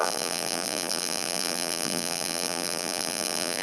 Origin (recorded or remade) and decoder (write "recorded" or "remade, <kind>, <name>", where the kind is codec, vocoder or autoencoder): remade, vocoder, BigVGAN v2